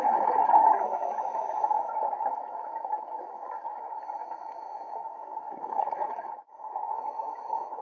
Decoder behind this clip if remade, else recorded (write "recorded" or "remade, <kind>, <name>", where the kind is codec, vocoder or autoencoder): remade, autoencoder, DAC-VAE